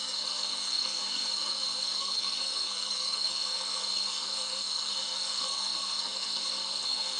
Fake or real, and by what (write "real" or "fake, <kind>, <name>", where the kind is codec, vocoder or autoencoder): fake, codec, SNAC